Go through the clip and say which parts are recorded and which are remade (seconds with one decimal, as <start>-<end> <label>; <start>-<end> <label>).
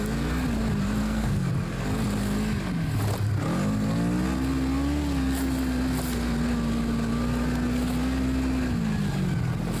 0.0-1.0 recorded; 1.0-1.5 remade; 1.5-9.8 recorded